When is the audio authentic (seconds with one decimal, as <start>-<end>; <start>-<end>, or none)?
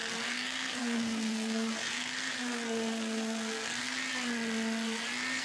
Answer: 4.0-5.4